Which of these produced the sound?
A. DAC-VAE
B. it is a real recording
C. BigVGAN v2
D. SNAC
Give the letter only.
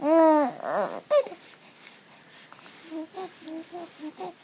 B